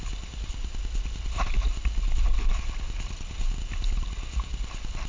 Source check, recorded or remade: recorded